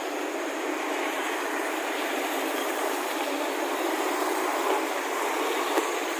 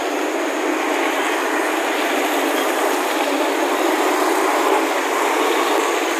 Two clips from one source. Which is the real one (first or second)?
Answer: second